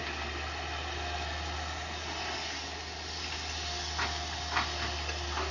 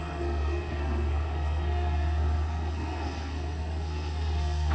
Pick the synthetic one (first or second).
second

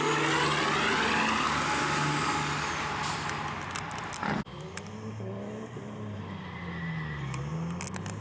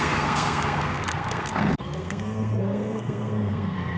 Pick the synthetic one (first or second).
second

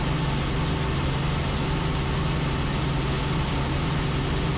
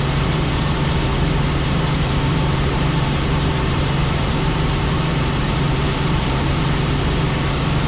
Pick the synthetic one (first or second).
second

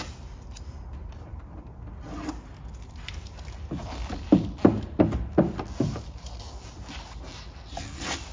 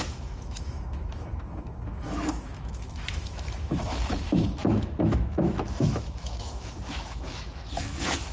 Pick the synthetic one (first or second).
second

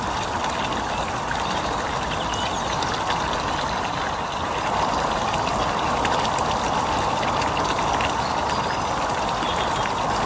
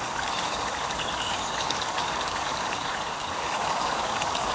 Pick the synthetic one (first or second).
second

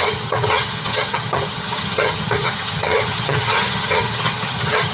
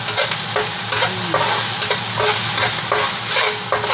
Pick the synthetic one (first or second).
first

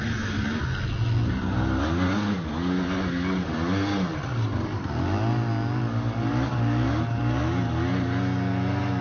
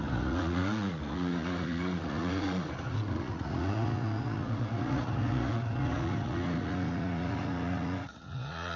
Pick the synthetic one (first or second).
second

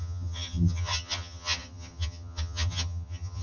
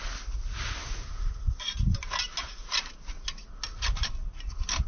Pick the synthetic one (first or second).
first